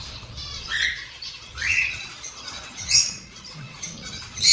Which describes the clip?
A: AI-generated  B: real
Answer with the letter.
A